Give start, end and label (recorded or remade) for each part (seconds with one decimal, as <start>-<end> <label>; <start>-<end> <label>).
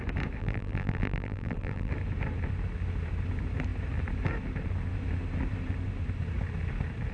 0.0-0.4 recorded; 0.4-1.9 remade; 1.9-7.1 recorded